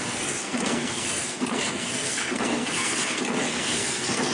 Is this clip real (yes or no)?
no